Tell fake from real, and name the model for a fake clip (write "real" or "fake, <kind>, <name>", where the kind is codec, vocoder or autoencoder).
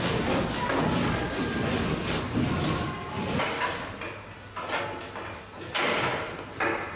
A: real